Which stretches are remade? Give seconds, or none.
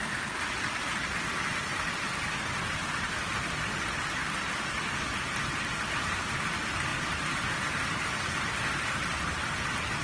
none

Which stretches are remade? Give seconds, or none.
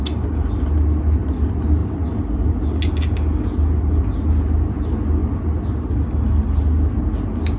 none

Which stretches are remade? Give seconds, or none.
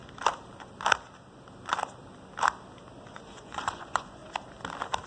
3.1-4.2 (vocoder, Vocos)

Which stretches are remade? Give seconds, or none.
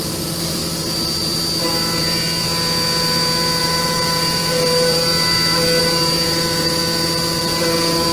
0.0-0.6 (vocoder, BigVGAN v2); 3.6-5.1; 5.8-6.8; 7.4-8.1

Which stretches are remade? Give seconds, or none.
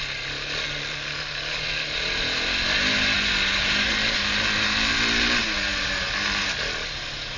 none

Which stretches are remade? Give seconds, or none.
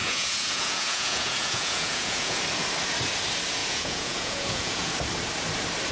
0.0-2.4 (vocoder, Vocos); 3.6-4.9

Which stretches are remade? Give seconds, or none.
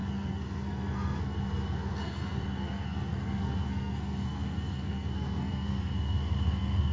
0.0-6.9 (codec, SNAC)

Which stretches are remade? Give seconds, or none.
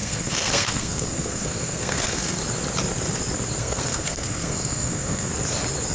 0.0-2.4 (codec, SNAC); 3.6-5.3